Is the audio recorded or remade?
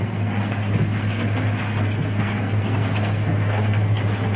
remade